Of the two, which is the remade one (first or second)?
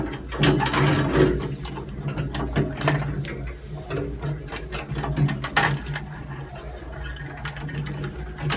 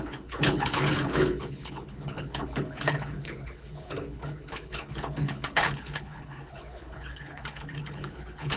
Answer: second